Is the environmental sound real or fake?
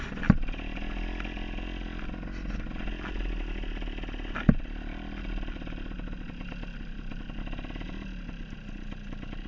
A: real